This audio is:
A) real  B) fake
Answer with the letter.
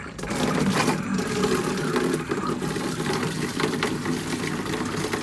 B